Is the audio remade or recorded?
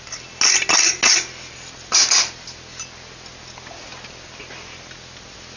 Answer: recorded